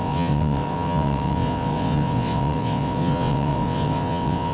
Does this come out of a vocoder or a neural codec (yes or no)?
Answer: yes